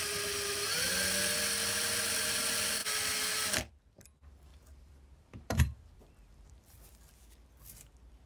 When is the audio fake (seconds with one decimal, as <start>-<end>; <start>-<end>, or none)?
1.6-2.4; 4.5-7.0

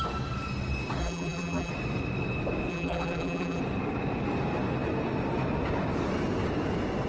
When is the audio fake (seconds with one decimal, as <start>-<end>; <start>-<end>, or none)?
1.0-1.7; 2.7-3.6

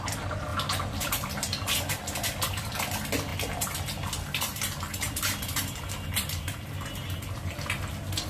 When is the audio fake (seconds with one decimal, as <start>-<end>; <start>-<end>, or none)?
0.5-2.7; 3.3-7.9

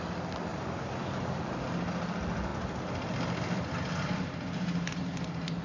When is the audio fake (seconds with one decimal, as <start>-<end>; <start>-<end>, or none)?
0.5-1.4; 2.5-5.0

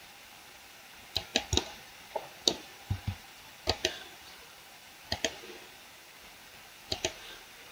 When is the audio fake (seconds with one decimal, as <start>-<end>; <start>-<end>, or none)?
1.3-5.4